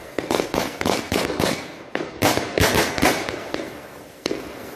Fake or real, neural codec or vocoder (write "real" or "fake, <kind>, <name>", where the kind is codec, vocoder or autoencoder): fake, codec, SNAC